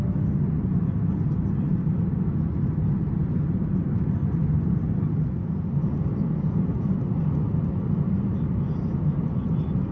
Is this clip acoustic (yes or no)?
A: yes